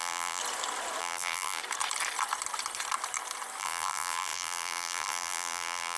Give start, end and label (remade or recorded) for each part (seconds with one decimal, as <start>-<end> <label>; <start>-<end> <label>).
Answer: 0.0-0.4 remade; 0.4-1.0 recorded; 1.0-1.6 remade; 1.6-3.6 recorded; 3.6-6.0 remade